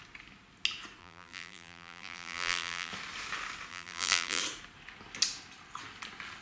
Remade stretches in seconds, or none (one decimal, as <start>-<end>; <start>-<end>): 1.0-2.9; 3.7-4.4